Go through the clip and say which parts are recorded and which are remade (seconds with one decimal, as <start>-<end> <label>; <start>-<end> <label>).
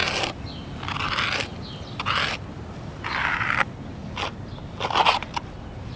0.0-6.0 recorded